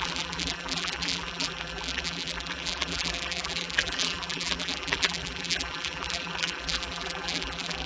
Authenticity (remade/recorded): remade